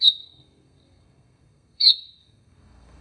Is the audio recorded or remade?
remade